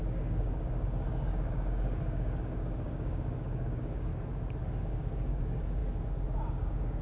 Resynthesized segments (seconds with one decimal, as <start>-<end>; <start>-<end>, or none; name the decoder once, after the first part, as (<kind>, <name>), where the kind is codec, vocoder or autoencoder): 0.0-4.1 (codec, DAC); 4.6-7.0

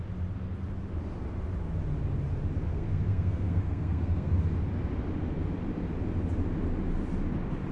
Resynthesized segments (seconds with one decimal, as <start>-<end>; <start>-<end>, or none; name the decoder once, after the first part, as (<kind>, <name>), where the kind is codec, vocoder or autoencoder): 2.7-4.4 (codec, SNAC)

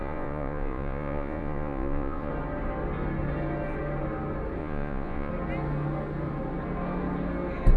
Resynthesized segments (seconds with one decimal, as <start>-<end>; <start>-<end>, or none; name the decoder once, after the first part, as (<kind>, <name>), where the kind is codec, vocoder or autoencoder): 0.0-2.3 (vocoder, Vocos); 4.6-5.3

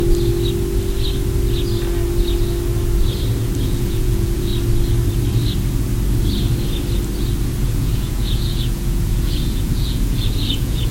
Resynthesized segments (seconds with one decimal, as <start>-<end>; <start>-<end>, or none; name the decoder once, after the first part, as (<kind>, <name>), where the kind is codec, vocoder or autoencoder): 3.6-4.5 (vocoder, Vocos); 7.6-10.9